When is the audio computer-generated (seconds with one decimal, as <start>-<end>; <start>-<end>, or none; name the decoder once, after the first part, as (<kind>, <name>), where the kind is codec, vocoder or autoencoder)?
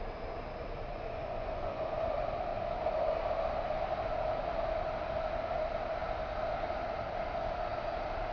0.9-2.1 (vocoder, Vocos)